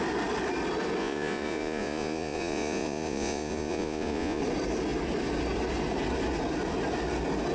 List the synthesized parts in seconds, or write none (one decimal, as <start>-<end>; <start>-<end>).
1.0-4.4